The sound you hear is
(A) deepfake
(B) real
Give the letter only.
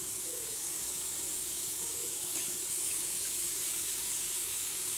A